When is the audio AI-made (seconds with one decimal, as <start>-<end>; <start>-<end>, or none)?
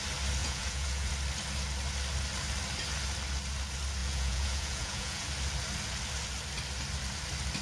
0.4-1.1; 4.0-5.3